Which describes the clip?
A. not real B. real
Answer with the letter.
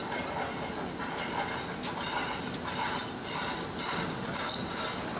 B